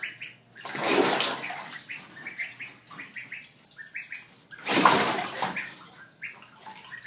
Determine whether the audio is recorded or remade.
recorded